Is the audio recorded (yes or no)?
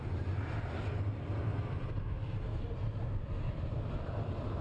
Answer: yes